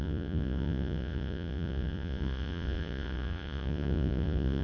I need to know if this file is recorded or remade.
remade